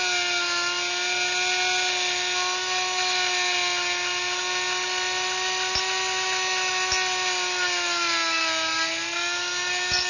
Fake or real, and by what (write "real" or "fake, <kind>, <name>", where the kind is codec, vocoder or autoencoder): real